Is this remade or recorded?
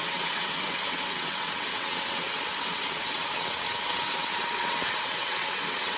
remade